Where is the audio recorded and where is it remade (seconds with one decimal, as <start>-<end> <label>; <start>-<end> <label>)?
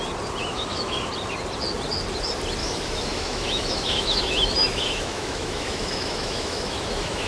0.0-0.4 recorded; 0.4-1.1 remade; 1.1-2.6 recorded; 2.6-7.3 remade